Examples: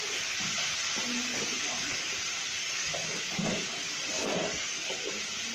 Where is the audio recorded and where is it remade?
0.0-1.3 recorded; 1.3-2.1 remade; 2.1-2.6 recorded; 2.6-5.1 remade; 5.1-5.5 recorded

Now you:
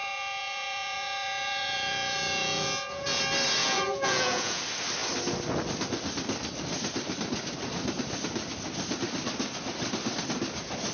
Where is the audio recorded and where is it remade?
0.0-3.2 remade; 3.2-3.6 recorded; 3.6-4.6 remade; 4.6-10.9 recorded